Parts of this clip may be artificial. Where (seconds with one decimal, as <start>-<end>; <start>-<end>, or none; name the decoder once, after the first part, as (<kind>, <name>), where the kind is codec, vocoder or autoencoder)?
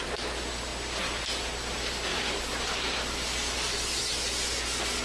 none